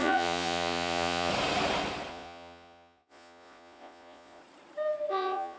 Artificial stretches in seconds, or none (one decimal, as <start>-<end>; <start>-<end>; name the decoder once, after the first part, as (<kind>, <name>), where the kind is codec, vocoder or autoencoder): 0.0-1.3 (vocoder, Vocos); 2.1-4.4; 5.1-5.6